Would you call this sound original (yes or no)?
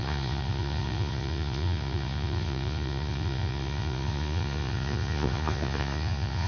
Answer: no